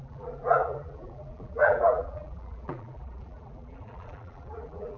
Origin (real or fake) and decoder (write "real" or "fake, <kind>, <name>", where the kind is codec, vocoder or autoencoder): fake, vocoder, BigVGAN v2